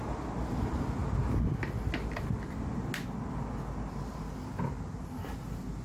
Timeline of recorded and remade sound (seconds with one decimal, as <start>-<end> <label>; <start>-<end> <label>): 0.0-5.8 recorded